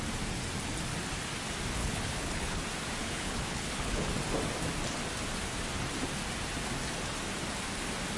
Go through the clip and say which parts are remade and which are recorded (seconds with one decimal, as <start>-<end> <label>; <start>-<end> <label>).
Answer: 0.0-1.8 recorded; 1.8-2.6 remade; 2.6-3.0 recorded; 3.0-4.1 remade; 4.1-8.2 recorded